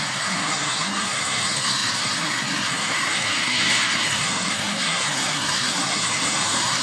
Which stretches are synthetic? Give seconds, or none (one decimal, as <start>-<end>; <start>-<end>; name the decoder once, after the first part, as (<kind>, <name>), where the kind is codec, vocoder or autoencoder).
0.0-6.8 (codec, SNAC)